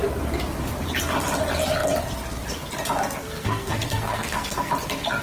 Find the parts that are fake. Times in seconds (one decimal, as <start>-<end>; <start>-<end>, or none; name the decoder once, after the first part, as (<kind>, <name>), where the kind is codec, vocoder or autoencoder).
3.2-4.7 (codec, SNAC)